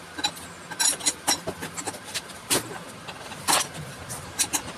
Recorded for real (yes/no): yes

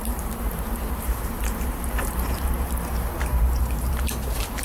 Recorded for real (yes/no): no